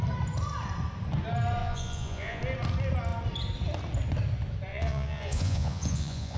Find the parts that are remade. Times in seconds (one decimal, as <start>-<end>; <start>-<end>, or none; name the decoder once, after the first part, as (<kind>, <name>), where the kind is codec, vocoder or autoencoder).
1.6-2.4 (vocoder, Vocos); 4.7-6.4